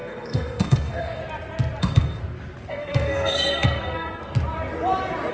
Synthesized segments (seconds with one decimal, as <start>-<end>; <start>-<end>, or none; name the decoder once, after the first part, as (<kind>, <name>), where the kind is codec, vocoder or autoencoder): 0.0-1.2 (codec, SNAC); 1.8-2.2; 2.7-4.2